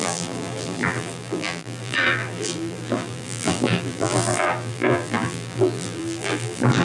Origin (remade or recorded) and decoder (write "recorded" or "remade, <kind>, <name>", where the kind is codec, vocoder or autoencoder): remade, vocoder, BigVGAN v2